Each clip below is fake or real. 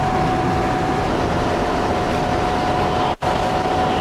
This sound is real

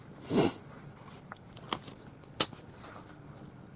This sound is real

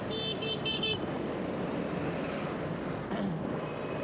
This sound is real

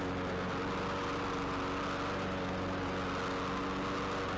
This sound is real